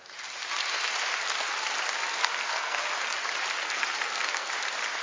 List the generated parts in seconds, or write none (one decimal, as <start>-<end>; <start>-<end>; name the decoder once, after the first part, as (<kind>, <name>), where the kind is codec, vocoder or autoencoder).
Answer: 2.1-2.8 (codec, SNAC); 3.6-4.5